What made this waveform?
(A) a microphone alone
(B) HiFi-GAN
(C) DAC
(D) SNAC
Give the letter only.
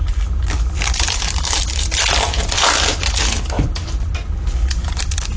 A